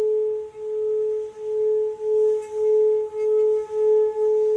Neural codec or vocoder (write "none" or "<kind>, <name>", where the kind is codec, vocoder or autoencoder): none